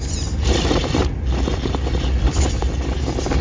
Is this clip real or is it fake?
real